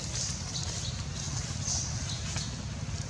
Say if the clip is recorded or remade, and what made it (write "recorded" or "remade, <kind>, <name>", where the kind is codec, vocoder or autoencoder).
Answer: recorded